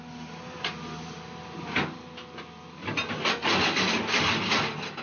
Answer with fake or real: real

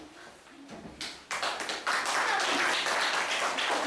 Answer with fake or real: real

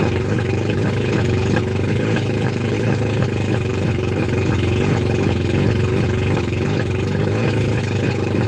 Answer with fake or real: fake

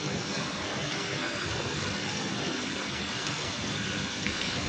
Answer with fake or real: fake